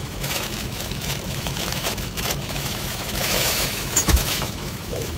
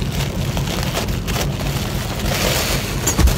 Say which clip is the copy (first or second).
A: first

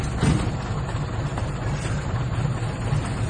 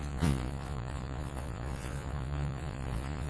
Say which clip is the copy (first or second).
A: second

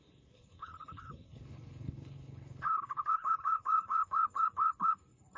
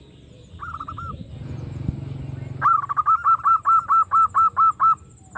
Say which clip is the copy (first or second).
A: first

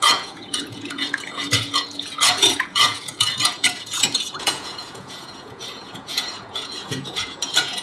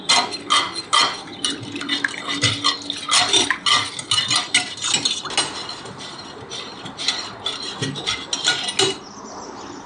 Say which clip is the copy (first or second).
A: first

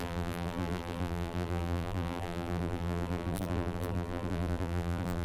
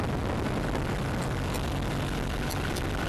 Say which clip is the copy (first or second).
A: first